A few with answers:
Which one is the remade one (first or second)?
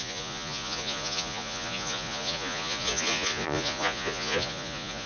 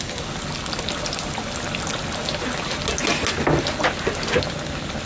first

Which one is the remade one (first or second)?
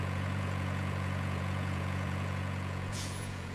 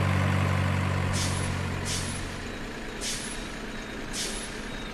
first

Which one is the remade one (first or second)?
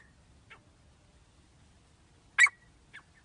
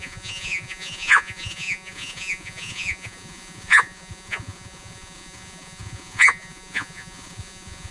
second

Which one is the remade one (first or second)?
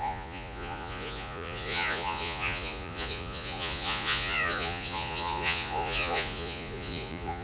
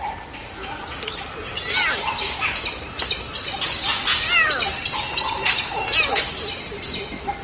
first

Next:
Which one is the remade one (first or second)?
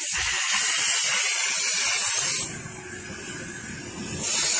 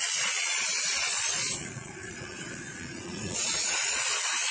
second